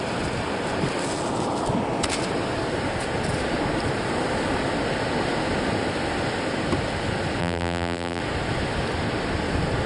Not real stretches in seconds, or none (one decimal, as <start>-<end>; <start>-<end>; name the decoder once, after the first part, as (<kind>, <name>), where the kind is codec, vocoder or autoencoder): 7.4-8.2 (vocoder, BigVGAN v2)